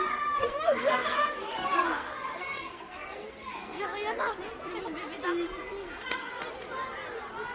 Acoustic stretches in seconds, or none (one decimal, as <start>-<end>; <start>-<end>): 0.0-0.4; 3.8-5.8; 6.4-7.5